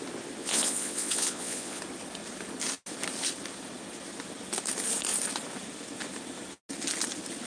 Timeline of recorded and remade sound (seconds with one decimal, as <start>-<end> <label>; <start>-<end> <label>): 0.0-0.4 recorded; 0.4-1.8 remade; 1.8-7.5 recorded